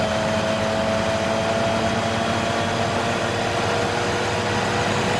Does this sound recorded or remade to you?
recorded